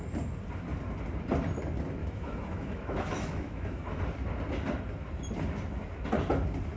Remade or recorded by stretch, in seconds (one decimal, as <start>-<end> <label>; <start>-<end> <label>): 0.0-2.0 recorded; 2.0-4.0 remade; 4.0-6.8 recorded